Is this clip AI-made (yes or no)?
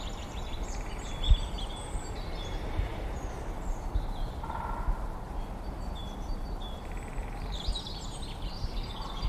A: yes